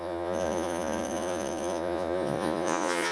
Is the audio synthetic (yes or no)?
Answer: yes